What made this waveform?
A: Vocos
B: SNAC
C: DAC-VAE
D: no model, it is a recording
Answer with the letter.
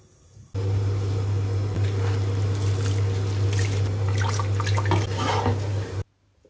D